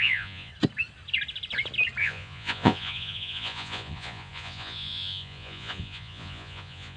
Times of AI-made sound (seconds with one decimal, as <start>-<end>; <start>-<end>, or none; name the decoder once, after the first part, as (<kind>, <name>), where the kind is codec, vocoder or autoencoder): 0.0-0.5 (vocoder, Vocos); 2.0-7.0